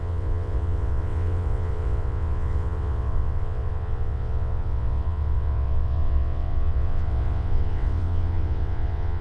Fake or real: fake